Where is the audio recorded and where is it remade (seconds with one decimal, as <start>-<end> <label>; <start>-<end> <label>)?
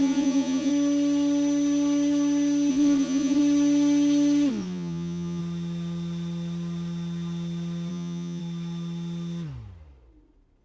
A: 0.0-0.7 remade; 0.7-2.7 recorded; 2.7-3.4 remade; 3.4-4.5 recorded; 4.5-5.4 remade; 5.4-7.9 recorded; 7.9-8.4 remade; 8.4-10.6 recorded